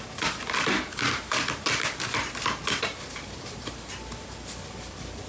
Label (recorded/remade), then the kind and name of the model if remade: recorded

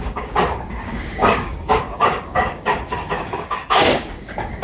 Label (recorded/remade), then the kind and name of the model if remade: remade, codec, DAC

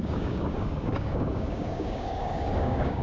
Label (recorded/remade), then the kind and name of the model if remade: remade, codec, DAC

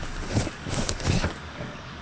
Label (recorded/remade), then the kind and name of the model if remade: remade, codec, DAC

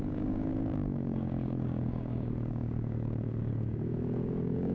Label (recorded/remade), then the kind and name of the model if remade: remade, codec, DAC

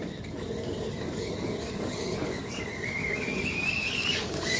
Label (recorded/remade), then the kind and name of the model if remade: remade, codec, DAC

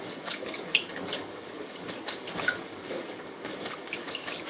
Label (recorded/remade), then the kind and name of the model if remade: remade, codec, DAC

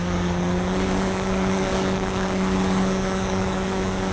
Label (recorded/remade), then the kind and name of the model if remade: remade, codec, DAC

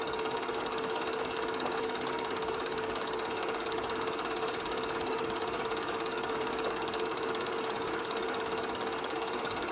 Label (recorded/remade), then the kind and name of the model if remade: remade, codec, DAC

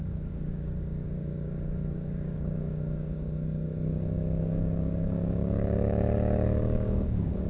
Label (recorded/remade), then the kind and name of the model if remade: remade, codec, DAC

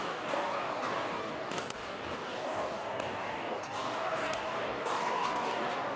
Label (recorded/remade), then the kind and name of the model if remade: remade, codec, DAC